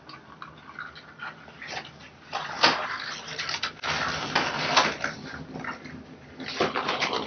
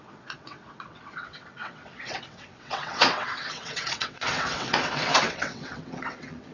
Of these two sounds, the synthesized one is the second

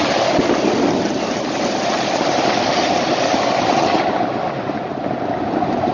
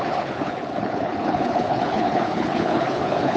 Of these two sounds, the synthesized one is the second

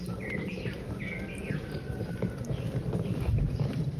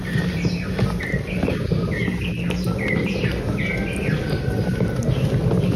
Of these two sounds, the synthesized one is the first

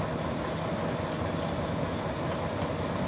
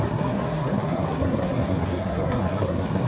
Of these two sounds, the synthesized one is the second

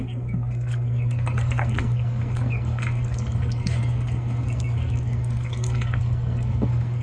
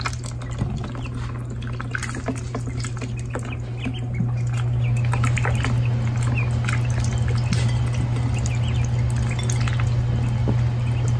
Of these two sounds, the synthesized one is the first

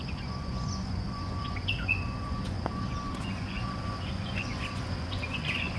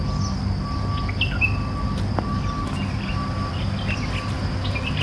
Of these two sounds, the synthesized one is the first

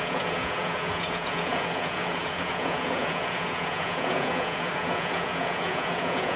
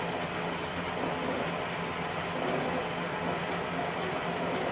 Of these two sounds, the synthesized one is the first